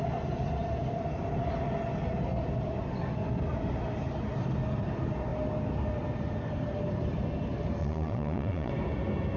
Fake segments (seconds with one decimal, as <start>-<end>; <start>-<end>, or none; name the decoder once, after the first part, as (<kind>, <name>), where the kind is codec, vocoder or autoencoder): 7.8-8.7 (vocoder, Vocos)